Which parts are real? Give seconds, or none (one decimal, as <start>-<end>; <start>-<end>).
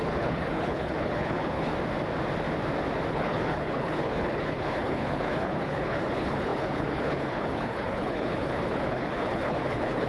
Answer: 1.7-3.1